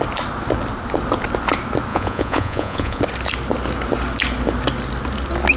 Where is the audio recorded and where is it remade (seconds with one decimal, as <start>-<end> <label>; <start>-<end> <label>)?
0.0-1.9 recorded; 1.9-3.0 remade; 3.0-5.6 recorded